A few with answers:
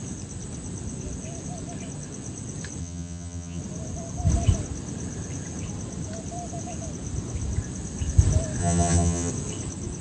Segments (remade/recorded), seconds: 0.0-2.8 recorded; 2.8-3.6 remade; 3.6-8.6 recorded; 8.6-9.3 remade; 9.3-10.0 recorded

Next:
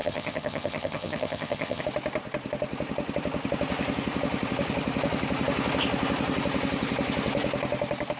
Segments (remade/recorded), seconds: 0.0-1.8 remade; 1.8-8.2 recorded

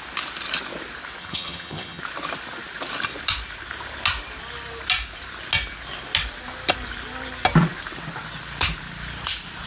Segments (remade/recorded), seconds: 0.0-1.2 recorded; 1.2-2.0 remade; 2.0-9.7 recorded

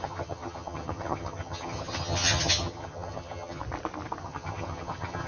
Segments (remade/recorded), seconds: 0.0-3.6 remade; 3.6-4.2 recorded; 4.2-5.3 remade